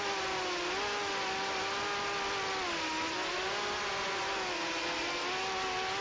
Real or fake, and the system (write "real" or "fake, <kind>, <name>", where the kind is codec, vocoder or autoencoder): real